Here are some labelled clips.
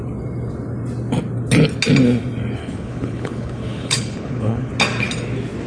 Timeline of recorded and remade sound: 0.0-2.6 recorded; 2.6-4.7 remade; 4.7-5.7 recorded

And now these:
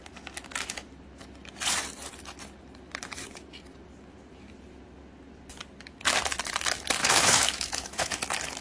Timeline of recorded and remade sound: 0.0-7.0 recorded; 7.0-8.1 remade; 8.1-8.6 recorded